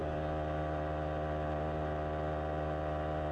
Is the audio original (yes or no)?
yes